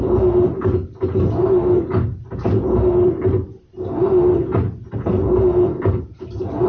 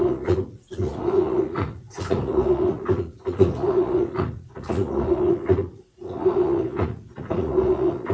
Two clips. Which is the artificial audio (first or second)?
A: second